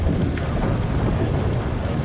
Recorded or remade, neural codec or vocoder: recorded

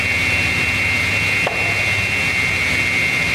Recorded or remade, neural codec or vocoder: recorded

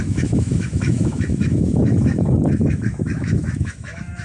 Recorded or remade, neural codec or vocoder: remade, autoencoder, DAC-VAE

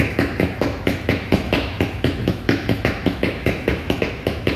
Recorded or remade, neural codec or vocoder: remade, autoencoder, DAC-VAE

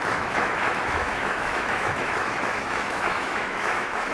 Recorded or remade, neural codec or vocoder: remade, autoencoder, DAC-VAE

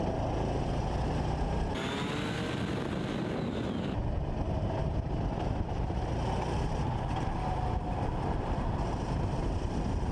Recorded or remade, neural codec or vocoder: recorded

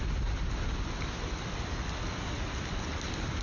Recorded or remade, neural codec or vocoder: recorded